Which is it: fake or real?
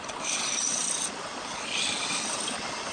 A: real